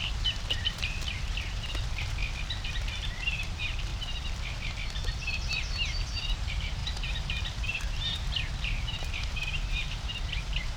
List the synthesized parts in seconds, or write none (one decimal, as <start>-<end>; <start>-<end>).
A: 0.0-2.2; 2.7-3.9; 4.9-10.8

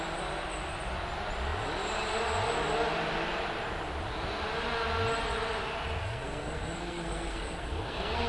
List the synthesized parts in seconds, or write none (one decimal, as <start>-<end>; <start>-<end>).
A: 6.0-8.3